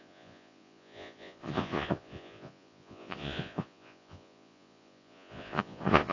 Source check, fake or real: fake